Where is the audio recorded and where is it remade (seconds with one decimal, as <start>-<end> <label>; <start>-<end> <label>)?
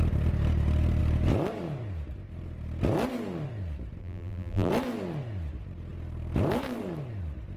0.0-4.0 recorded; 4.0-4.7 remade; 4.7-7.6 recorded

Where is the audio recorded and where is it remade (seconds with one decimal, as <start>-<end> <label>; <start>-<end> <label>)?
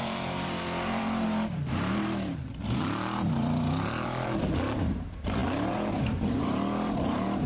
0.0-7.5 remade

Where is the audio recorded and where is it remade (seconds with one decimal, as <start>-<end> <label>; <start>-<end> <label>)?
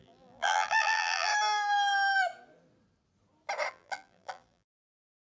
0.0-1.3 remade; 1.3-3.7 recorded; 3.7-5.4 remade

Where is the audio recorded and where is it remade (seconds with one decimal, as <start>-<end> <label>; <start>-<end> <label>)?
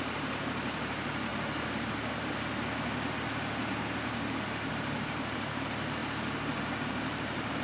0.0-1.3 remade; 1.3-4.7 recorded; 4.7-7.6 remade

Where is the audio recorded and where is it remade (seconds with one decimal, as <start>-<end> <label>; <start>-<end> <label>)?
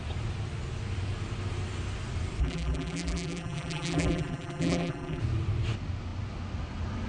0.0-2.4 recorded; 2.4-5.2 remade; 5.2-7.1 recorded